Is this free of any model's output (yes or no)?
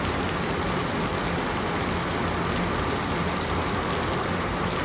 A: yes